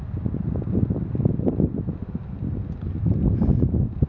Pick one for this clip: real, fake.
real